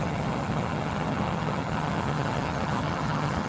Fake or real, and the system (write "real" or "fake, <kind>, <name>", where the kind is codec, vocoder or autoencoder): fake, vocoder, HiFi-GAN